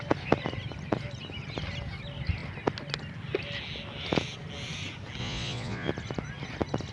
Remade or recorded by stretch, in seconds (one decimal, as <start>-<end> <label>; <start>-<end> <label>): 0.0-5.2 recorded; 5.2-5.9 remade; 5.9-6.9 recorded